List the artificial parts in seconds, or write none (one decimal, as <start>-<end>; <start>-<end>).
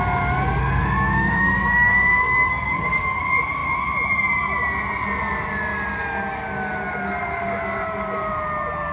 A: 0.6-3.2